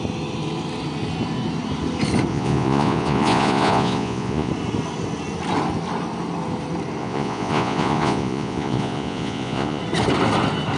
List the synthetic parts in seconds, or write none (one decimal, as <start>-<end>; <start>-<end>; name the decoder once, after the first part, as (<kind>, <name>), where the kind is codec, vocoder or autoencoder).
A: 2.3-4.5 (vocoder, Vocos); 7.0-9.8